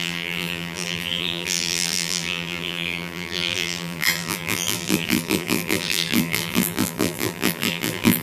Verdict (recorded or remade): remade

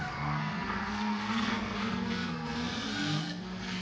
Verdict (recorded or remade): remade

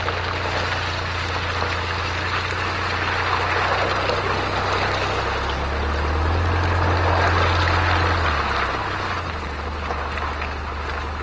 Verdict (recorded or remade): recorded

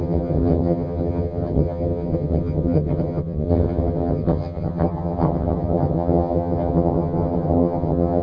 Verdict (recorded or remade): remade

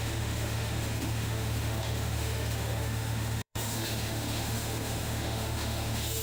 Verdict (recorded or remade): remade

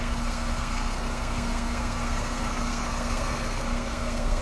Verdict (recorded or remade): remade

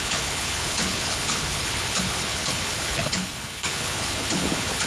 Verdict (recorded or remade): remade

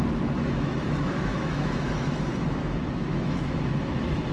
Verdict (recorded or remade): remade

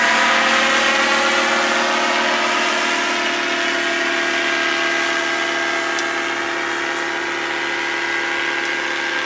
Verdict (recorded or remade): recorded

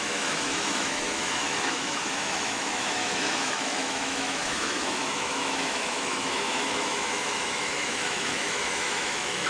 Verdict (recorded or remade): remade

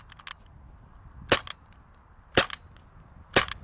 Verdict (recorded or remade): recorded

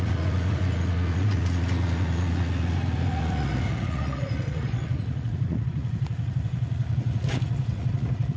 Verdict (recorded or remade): remade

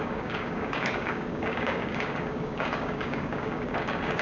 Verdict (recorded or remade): remade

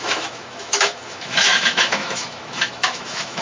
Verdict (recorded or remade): remade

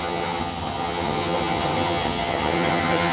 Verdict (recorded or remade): remade